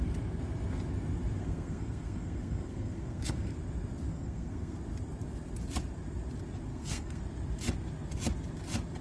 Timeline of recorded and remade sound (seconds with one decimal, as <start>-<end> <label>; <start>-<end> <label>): 0.0-1.4 recorded; 1.4-3.5 remade; 3.5-4.1 recorded; 4.1-4.8 remade; 4.8-6.7 recorded; 6.7-7.2 remade; 7.2-9.0 recorded

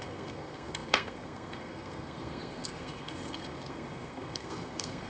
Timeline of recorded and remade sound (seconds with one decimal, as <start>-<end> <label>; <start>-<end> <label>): 0.0-5.1 remade

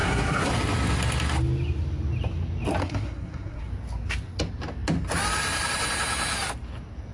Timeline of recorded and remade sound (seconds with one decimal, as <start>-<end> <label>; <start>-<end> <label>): 0.0-0.5 remade; 0.5-2.8 recorded; 2.8-3.7 remade; 3.7-7.1 recorded

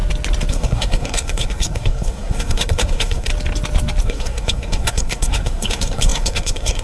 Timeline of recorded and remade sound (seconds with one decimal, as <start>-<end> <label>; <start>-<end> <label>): 0.0-0.5 recorded; 0.5-3.3 remade; 3.3-4.0 recorded; 4.0-6.8 remade

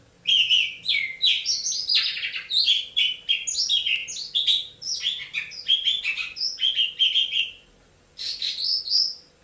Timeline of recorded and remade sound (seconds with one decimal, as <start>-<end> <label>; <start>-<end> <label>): 0.0-9.4 recorded